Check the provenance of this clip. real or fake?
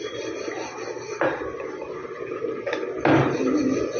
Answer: real